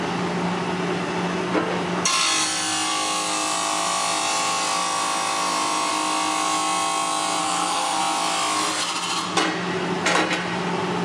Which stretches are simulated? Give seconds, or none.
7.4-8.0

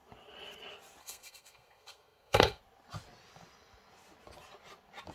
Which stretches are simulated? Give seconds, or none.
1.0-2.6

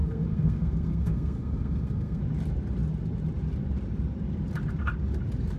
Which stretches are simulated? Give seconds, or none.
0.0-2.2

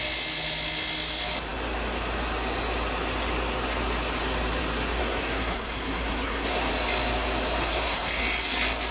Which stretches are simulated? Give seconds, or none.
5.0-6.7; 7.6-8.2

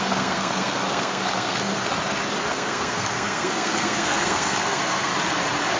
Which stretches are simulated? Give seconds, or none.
0.0-1.9; 2.5-5.1

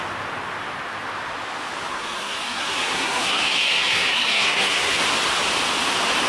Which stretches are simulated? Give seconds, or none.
1.9-5.0